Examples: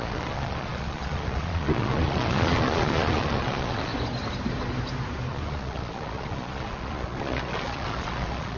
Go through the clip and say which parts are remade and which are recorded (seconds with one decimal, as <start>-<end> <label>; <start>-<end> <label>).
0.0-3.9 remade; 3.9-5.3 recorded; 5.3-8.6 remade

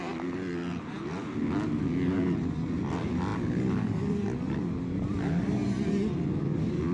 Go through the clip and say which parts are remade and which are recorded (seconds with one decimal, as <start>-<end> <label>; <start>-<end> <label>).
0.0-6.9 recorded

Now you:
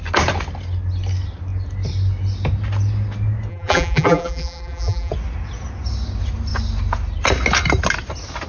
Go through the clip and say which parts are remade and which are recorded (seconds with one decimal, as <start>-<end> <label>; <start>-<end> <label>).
0.0-3.5 recorded; 3.5-5.1 remade; 5.1-8.5 recorded

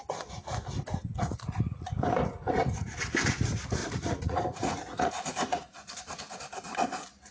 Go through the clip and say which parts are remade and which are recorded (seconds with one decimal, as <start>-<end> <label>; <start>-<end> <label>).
0.0-1.1 recorded; 1.1-1.9 remade; 1.9-3.8 recorded; 3.8-6.0 remade; 6.0-7.3 recorded

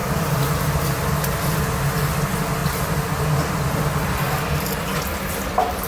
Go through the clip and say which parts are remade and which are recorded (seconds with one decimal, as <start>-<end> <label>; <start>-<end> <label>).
0.0-1.6 remade; 1.6-2.6 recorded; 2.6-4.4 remade; 4.4-5.9 recorded

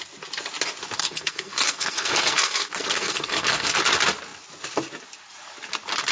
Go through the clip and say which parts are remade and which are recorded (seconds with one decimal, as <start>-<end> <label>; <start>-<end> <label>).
0.0-1.0 recorded; 1.0-3.8 remade; 3.8-6.1 recorded